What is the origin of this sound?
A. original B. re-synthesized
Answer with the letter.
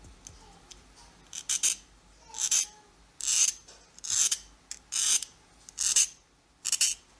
A